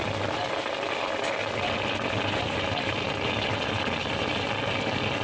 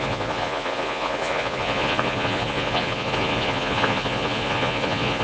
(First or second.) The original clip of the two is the first